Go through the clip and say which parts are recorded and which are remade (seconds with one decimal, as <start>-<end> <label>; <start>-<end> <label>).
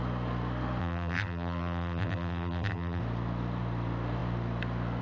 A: 0.0-0.8 recorded; 0.8-3.0 remade; 3.0-5.0 recorded